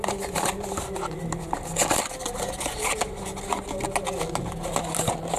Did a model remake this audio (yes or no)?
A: no